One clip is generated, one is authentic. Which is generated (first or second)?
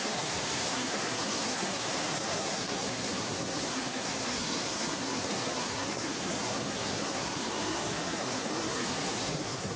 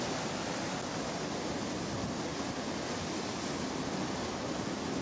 first